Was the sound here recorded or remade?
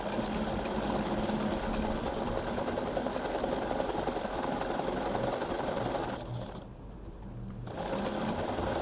recorded